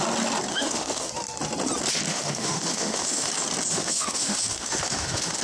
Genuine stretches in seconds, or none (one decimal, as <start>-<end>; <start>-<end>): 0.0-0.5; 1.1-2.1; 3.3-3.7